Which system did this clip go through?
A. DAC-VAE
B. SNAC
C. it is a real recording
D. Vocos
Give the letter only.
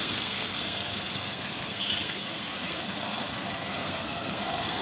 B